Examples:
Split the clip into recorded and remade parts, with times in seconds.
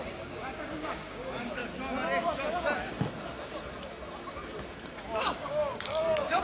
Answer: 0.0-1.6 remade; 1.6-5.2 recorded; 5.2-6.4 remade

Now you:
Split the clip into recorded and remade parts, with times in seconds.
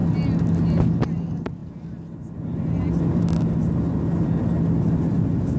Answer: 0.0-5.6 recorded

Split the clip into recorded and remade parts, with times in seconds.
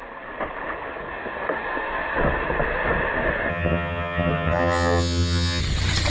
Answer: 0.0-3.5 recorded; 3.5-5.6 remade; 5.6-6.1 recorded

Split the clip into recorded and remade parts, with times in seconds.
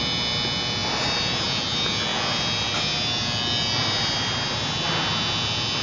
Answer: 0.0-5.8 recorded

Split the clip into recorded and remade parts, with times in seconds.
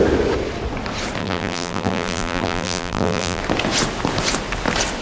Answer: 0.0-1.2 recorded; 1.2-3.4 remade; 3.4-5.0 recorded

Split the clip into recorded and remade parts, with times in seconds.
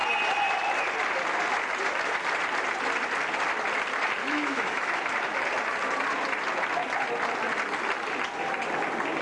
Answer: 0.0-4.2 recorded; 4.2-5.0 remade; 5.0-9.2 recorded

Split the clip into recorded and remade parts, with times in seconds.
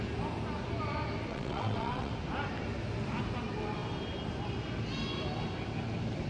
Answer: 0.0-1.3 recorded; 1.3-2.1 remade; 2.1-6.3 recorded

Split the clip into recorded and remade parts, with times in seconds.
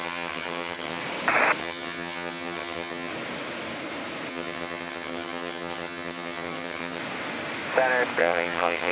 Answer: 0.0-1.0 remade; 1.0-1.6 recorded; 1.6-3.1 remade; 3.1-4.3 recorded; 4.3-7.0 remade; 7.0-8.2 recorded; 8.2-8.9 remade